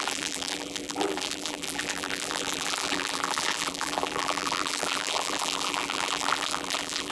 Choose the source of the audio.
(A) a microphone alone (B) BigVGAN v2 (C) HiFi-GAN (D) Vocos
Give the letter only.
B